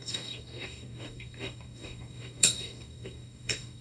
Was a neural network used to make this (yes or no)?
yes